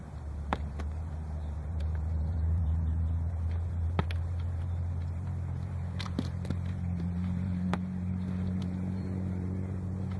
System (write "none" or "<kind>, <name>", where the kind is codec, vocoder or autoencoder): vocoder, BigVGAN v2